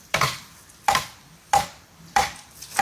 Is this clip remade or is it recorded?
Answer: remade